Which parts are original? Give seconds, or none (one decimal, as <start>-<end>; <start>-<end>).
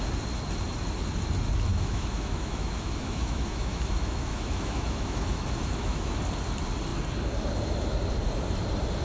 0.0-1.7; 6.2-9.0